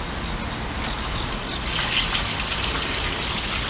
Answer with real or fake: real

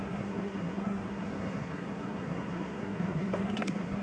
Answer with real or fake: fake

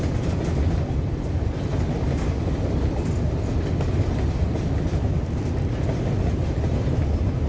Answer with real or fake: real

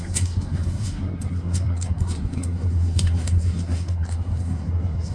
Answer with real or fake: fake